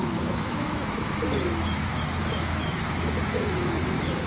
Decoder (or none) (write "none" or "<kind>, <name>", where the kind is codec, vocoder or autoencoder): autoencoder, DAC-VAE